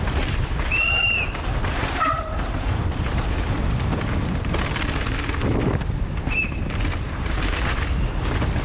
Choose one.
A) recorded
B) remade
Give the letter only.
B